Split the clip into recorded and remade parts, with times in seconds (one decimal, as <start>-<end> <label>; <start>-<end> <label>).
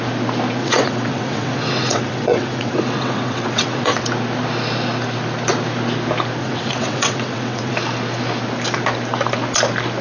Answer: 0.0-0.6 recorded; 0.6-4.0 remade; 4.0-6.4 recorded; 6.4-7.7 remade; 7.7-10.0 recorded